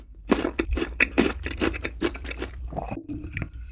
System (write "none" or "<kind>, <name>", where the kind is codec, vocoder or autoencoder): vocoder, BigVGAN v2